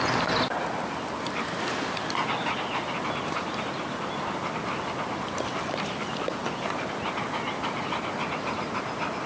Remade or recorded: recorded